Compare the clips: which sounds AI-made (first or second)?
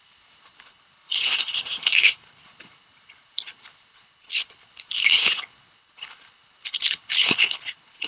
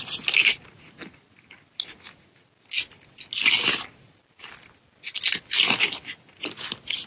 first